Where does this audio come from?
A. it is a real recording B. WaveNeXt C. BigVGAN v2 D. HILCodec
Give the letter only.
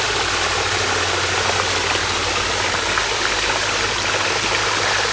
A